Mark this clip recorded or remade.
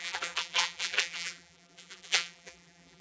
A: remade